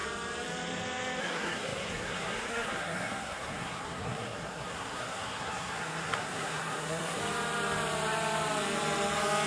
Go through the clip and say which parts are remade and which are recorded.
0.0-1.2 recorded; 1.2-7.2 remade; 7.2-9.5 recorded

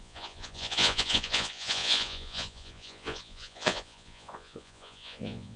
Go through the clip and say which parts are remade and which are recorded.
0.0-5.6 remade